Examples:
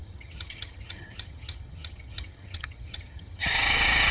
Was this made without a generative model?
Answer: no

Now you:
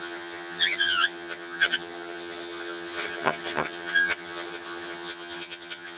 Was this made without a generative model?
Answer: no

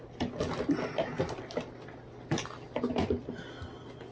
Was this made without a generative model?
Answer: yes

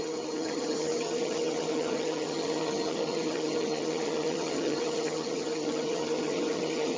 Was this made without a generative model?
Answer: no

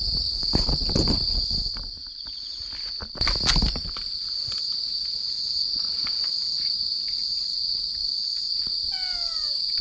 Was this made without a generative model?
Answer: yes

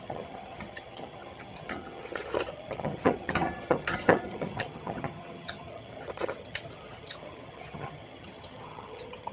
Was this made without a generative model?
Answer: no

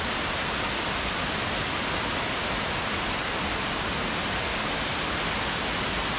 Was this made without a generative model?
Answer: yes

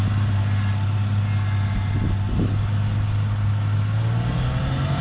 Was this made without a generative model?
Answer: yes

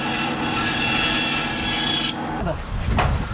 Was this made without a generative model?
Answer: yes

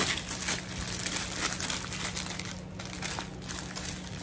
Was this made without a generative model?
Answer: yes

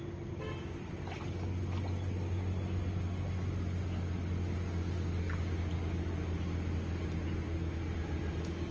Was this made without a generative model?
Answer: yes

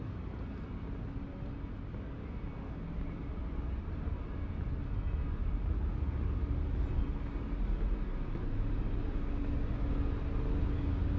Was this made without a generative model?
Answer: yes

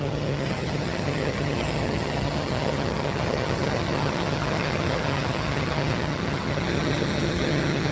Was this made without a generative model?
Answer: no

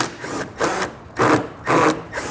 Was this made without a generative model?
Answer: yes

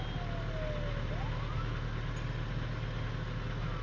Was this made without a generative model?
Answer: yes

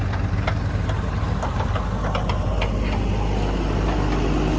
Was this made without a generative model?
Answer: yes